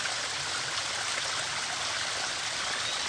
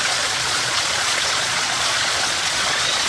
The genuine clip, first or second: first